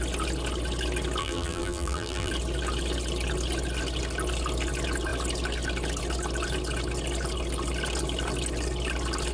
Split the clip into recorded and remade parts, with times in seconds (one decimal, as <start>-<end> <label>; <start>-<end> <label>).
0.0-1.2 recorded; 1.2-2.3 remade; 2.3-9.3 recorded